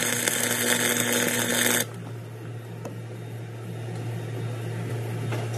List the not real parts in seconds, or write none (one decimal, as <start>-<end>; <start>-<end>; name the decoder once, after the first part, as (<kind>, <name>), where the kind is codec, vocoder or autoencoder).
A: none